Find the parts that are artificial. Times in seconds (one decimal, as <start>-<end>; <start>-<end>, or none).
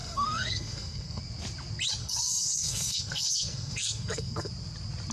0.0-1.2; 2.0-4.5